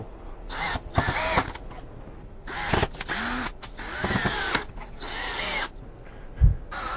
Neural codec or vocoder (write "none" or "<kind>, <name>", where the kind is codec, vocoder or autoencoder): none